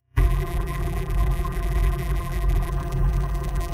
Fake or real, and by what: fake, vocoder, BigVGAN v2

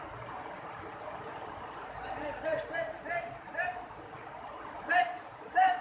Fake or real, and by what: fake, vocoder, BigVGAN v2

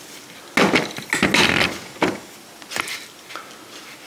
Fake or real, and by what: real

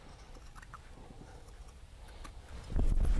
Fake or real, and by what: real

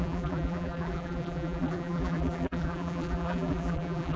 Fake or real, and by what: fake, vocoder, BigVGAN v2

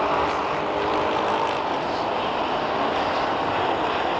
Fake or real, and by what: fake, vocoder, BigVGAN v2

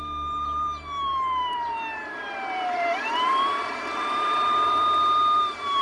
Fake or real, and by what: fake, vocoder, BigVGAN v2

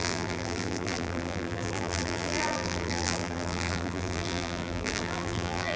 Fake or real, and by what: fake, vocoder, BigVGAN v2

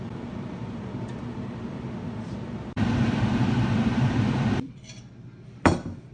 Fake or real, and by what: fake, vocoder, BigVGAN v2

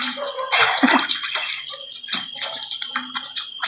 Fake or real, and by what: fake, vocoder, BigVGAN v2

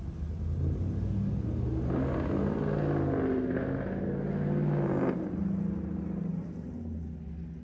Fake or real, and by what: real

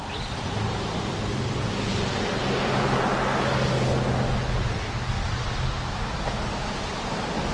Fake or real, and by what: real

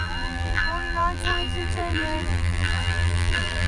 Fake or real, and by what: fake, vocoder, BigVGAN v2